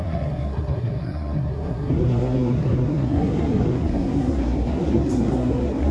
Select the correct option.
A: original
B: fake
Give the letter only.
B